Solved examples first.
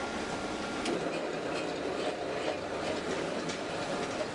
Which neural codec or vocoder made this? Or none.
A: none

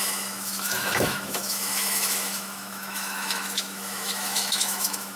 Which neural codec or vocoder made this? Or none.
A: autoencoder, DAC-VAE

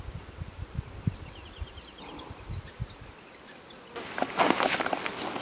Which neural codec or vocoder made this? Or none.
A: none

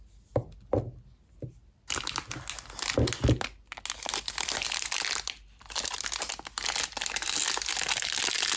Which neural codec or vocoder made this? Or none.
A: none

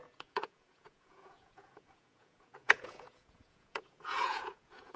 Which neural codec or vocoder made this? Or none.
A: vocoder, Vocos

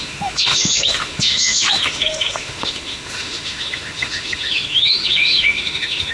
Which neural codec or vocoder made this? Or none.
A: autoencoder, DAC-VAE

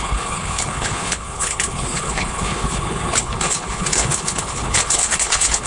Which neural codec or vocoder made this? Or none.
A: codec, HILCodec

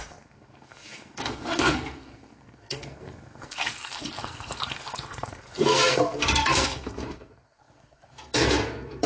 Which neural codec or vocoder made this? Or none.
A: codec, SNAC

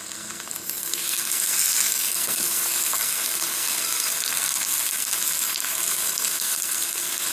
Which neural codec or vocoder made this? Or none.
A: codec, SNAC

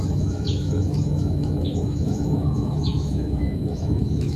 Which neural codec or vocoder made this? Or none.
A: autoencoder, DAC-VAE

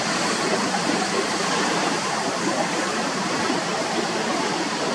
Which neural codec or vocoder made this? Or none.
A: vocoder, BigVGAN v2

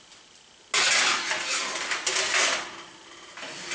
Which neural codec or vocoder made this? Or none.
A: none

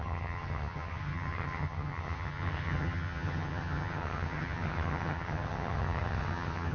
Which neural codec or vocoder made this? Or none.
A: vocoder, HiFi-GAN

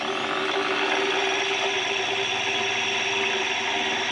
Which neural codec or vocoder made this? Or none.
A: none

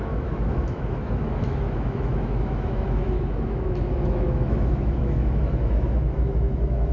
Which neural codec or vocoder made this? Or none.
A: autoencoder, DAC-VAE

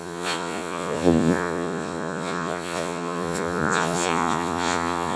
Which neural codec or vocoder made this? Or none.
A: vocoder, Vocos